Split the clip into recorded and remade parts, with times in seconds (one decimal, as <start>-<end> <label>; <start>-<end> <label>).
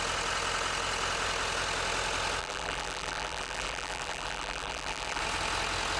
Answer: 0.0-2.4 recorded; 2.4-5.2 remade; 5.2-6.0 recorded